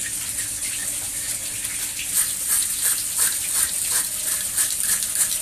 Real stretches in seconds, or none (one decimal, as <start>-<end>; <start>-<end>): 0.0-5.4